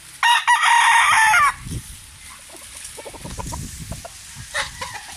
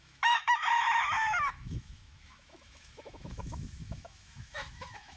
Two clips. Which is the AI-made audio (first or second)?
second